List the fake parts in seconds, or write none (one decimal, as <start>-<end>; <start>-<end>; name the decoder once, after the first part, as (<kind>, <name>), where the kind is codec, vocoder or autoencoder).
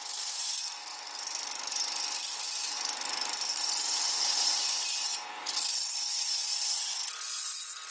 0.9-1.7 (vocoder, BigVGAN v2); 2.3-4.6